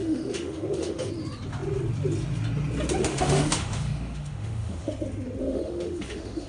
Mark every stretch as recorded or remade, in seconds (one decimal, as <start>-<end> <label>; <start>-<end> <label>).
0.0-1.1 remade; 1.1-3.0 recorded; 3.0-4.9 remade; 4.9-5.4 recorded; 5.4-6.5 remade